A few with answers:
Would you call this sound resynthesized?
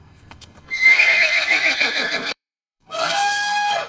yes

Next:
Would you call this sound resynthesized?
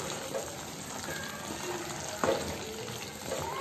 no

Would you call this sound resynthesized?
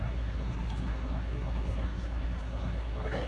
yes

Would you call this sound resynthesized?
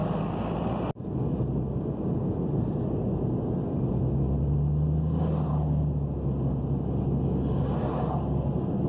no